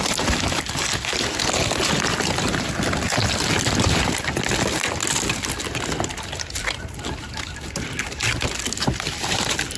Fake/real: real